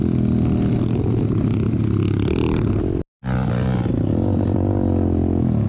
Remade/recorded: recorded